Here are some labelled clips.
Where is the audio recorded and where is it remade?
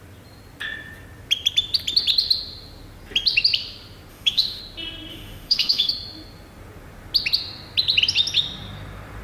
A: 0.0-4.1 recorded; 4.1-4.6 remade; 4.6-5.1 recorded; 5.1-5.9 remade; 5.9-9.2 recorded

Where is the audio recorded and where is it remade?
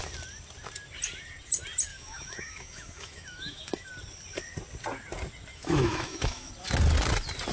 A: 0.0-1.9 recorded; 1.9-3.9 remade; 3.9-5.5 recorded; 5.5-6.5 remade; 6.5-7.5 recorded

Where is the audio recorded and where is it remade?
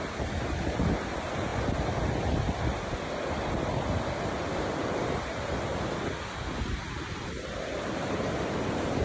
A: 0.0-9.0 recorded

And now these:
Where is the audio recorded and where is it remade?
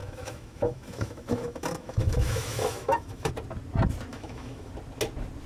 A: 0.0-3.3 remade; 3.3-4.1 recorded; 4.1-4.7 remade; 4.7-5.5 recorded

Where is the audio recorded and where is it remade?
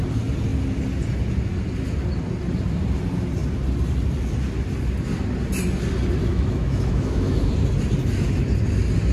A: 0.0-6.3 recorded; 6.3-7.5 remade; 7.5-9.1 recorded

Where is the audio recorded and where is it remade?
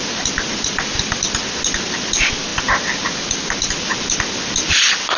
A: 0.0-5.2 recorded